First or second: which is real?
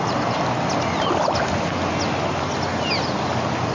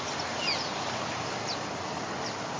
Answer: first